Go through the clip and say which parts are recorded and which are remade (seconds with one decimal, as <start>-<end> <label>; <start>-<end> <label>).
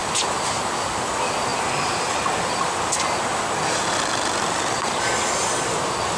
0.0-6.2 recorded